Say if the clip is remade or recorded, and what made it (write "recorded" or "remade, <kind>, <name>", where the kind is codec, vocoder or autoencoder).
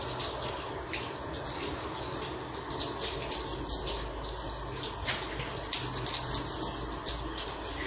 recorded